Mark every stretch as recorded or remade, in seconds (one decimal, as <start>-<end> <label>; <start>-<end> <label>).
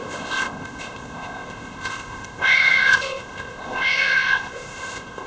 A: 0.0-5.3 remade